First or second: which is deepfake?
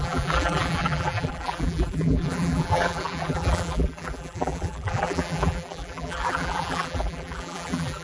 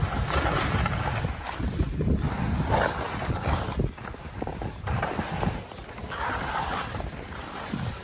first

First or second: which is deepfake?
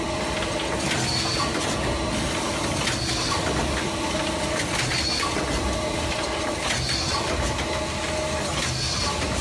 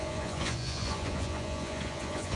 second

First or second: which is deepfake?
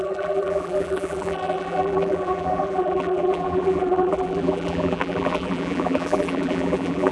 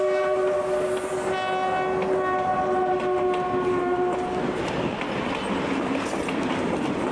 first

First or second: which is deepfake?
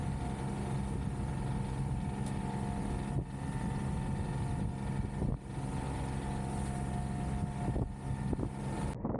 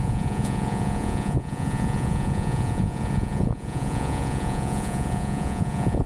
second